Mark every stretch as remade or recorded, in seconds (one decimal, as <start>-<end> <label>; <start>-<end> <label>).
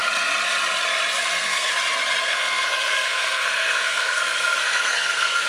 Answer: 0.0-1.2 recorded; 1.2-1.7 remade; 1.7-2.2 recorded; 2.2-5.5 remade